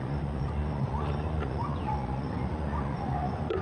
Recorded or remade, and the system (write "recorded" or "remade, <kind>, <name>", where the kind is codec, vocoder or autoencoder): remade, vocoder, Vocos